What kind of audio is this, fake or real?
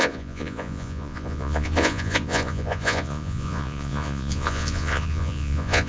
fake